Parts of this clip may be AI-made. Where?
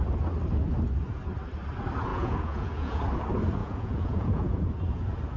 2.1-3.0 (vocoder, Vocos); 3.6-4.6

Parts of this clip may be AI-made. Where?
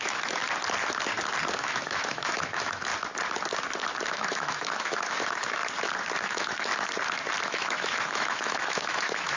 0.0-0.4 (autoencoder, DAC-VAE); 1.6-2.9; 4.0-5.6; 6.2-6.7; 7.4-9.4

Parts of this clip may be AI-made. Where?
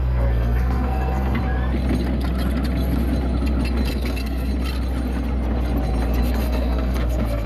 0.0-1.4 (codec, SNAC); 3.9-4.5; 6.2-7.5